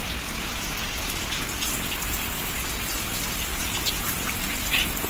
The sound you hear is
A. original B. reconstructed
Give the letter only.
A